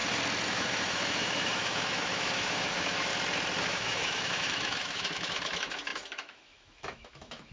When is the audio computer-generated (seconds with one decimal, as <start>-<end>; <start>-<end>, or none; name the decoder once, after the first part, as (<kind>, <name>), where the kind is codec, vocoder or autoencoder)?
0.5-3.1 (autoencoder, DAC-VAE); 3.6-7.5